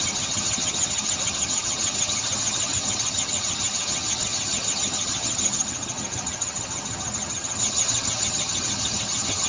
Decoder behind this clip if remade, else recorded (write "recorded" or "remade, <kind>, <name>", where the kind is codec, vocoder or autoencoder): remade, vocoder, HiFi-GAN